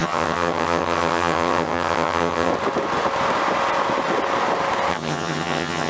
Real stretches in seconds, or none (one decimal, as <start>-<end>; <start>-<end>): 2.5-4.9